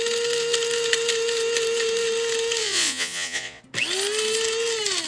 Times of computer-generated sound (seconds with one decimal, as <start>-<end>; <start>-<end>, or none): 2.6-3.6